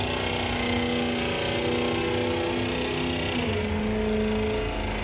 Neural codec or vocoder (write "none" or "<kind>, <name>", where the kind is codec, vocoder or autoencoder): none